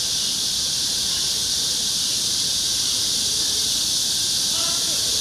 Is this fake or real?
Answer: fake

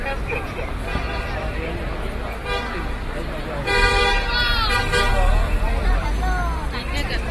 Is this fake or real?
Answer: real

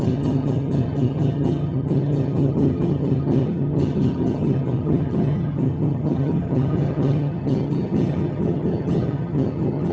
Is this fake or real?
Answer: fake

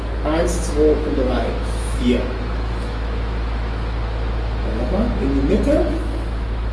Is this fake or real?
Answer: fake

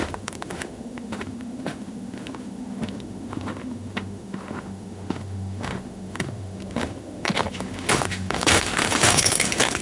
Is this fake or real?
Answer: fake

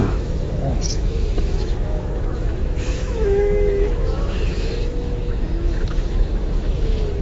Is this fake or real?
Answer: fake